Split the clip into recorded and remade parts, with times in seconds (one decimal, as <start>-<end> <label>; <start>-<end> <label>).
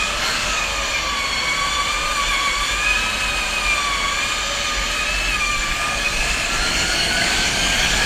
0.0-0.7 remade; 0.7-5.4 recorded; 5.4-8.1 remade